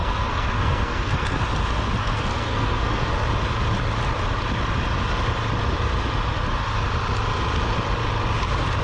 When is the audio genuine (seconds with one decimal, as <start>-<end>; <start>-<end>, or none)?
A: 1.4-2.0; 3.1-8.8